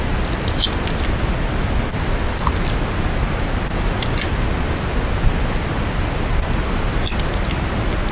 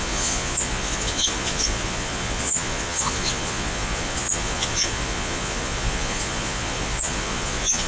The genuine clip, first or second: first